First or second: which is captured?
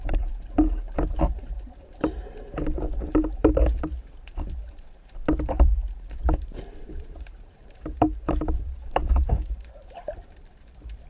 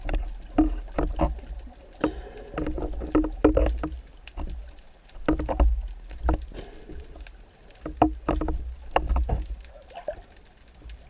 second